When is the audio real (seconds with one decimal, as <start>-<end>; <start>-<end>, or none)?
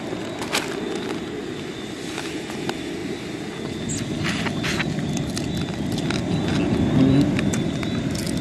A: 0.0-8.4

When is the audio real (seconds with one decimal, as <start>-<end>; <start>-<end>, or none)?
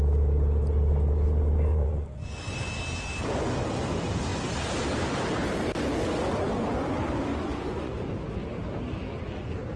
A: 0.0-1.7; 2.7-7.3; 7.9-9.8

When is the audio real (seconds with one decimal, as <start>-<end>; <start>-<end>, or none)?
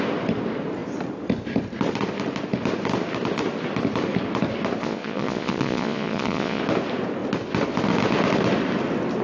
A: 0.0-4.8; 6.6-9.2